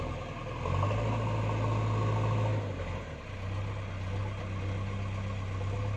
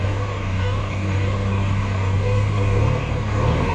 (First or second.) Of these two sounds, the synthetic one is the second